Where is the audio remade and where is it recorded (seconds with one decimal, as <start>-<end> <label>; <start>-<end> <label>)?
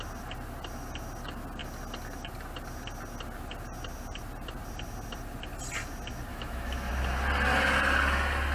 0.0-6.3 recorded; 6.3-6.9 remade; 6.9-8.5 recorded